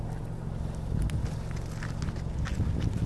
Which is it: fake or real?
real